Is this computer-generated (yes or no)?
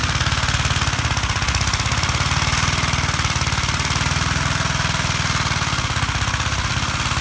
no